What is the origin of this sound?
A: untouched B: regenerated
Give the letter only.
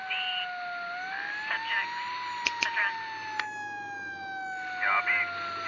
A